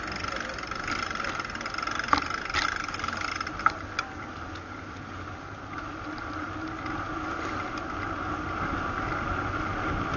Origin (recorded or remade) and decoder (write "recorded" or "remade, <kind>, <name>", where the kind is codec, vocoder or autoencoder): recorded